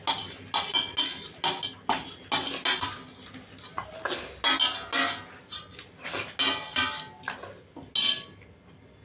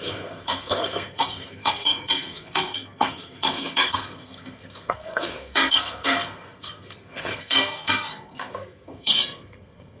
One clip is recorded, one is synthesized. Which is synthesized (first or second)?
second